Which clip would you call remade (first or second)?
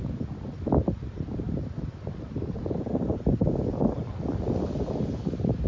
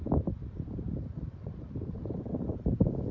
second